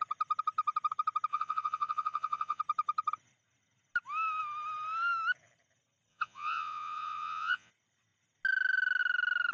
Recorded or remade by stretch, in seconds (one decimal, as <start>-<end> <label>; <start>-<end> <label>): 0.0-1.3 recorded; 1.3-2.6 remade; 2.6-6.1 recorded; 6.1-7.7 remade; 7.7-9.5 recorded